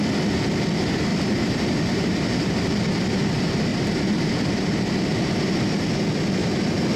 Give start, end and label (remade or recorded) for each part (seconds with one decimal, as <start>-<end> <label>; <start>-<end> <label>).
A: 0.0-1.1 recorded; 1.1-2.8 remade; 2.8-3.7 recorded; 3.7-5.5 remade; 5.5-7.0 recorded